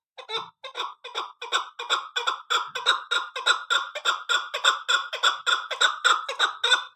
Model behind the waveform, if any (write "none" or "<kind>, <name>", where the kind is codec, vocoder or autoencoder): none